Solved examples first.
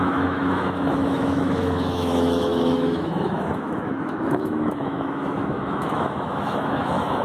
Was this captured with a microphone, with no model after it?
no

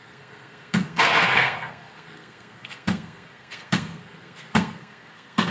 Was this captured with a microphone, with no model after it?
no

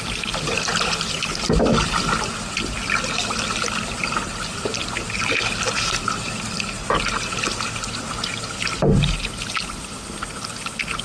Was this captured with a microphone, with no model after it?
yes